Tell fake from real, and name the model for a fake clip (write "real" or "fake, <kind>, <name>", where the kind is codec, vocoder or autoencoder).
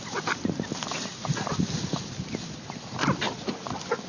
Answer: real